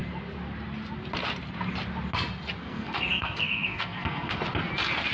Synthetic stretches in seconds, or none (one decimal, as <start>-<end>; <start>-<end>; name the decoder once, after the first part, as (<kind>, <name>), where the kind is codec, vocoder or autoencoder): 2.6-4.4 (codec, SNAC)